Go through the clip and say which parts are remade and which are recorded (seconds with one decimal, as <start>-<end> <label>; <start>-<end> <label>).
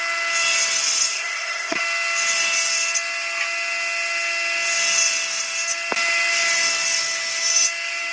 0.0-1.1 recorded; 1.1-1.8 remade; 1.8-8.1 recorded